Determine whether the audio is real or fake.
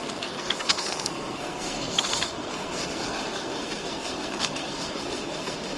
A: fake